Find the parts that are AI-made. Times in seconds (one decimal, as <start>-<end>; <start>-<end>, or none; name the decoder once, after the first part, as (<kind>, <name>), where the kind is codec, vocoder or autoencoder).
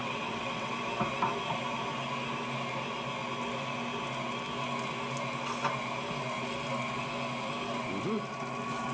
0.0-0.7 (vocoder, WaveNeXt)